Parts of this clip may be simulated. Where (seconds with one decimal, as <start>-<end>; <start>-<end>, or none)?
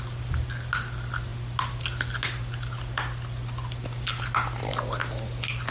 none